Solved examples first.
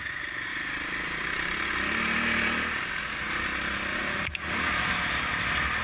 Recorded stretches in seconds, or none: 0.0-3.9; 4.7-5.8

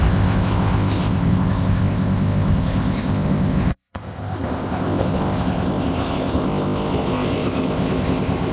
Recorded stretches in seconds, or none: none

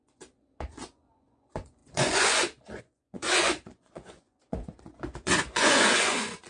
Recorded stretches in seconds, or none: none

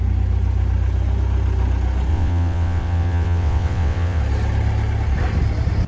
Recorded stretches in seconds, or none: 0.0-2.1; 4.2-5.9